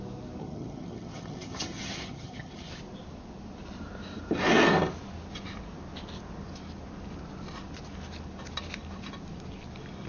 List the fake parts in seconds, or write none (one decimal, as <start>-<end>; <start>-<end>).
0.4-2.7